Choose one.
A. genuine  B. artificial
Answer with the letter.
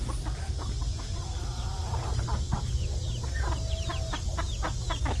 A